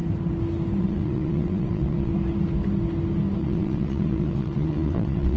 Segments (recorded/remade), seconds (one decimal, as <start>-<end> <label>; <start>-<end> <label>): 0.0-0.8 recorded; 0.8-2.1 remade; 2.1-3.4 recorded; 3.4-5.4 remade